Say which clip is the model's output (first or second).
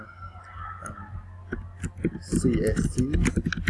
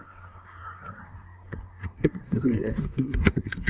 second